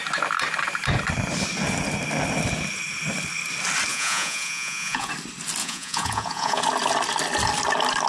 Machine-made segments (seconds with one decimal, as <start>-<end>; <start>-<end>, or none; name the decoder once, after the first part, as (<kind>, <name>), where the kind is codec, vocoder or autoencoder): 3.9-5.1 (vocoder, Vocos); 5.6-6.6